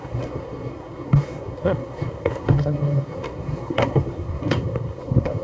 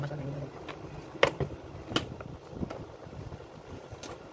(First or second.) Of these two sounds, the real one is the second